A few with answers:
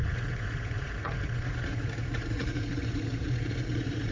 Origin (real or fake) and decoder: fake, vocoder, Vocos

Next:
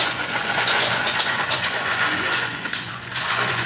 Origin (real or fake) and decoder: fake, vocoder, Vocos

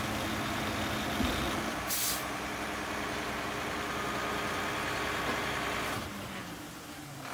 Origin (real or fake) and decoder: real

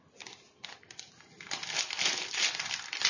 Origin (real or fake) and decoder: real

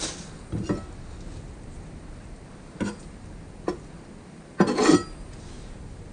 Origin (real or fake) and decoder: real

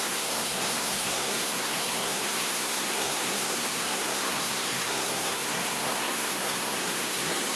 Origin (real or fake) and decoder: fake, codec, SNAC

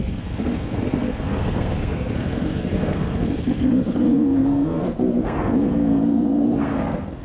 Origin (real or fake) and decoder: fake, codec, SNAC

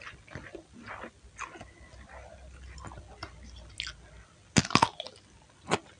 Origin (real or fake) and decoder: real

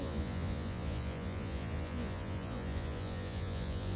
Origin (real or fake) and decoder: fake, vocoder, Vocos